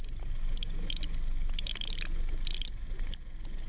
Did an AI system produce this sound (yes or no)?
no